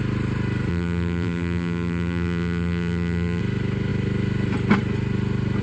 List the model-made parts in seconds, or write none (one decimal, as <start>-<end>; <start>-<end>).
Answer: 0.7-3.4